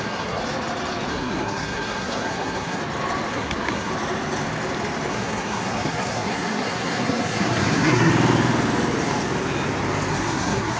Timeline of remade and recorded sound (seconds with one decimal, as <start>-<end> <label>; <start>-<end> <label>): 0.0-0.4 remade; 0.4-1.1 recorded; 1.1-2.8 remade; 2.8-3.3 recorded; 3.3-3.9 remade; 3.9-5.1 recorded; 5.1-8.1 remade; 8.1-10.1 recorded; 10.1-10.8 remade